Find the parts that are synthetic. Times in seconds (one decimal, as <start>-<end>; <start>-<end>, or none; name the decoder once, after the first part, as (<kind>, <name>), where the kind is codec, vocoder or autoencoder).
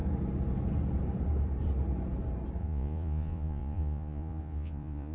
2.6-5.1 (vocoder, Vocos)